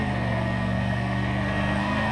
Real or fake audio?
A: fake